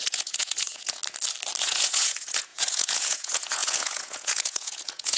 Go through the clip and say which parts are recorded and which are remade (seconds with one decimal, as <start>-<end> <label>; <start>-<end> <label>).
0.0-1.0 remade; 1.0-1.6 recorded; 1.6-5.2 remade